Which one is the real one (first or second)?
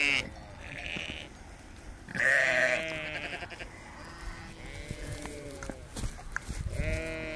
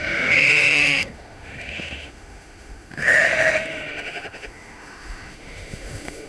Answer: first